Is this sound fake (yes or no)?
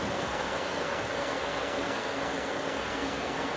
yes